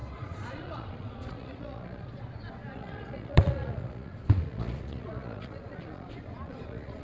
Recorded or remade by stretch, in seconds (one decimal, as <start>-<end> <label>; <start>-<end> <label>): 0.0-7.0 remade